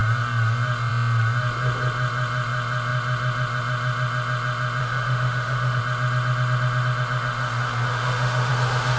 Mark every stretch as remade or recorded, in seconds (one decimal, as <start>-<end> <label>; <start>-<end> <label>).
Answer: 0.0-4.8 recorded; 4.8-5.8 remade; 5.8-7.9 recorded; 7.9-8.5 remade; 8.5-9.0 recorded